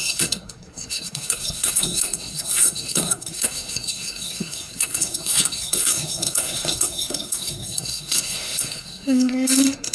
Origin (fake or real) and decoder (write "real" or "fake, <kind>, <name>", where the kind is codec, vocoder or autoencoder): fake, codec, SNAC